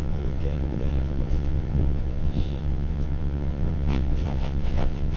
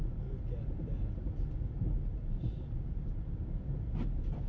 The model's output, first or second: first